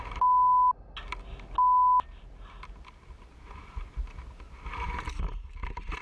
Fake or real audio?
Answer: real